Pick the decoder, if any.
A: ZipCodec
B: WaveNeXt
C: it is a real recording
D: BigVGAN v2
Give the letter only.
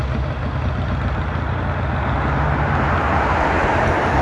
C